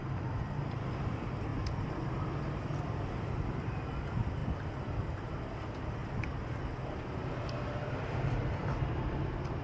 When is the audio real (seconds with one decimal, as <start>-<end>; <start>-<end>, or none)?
1.5-3.4; 6.0-7.9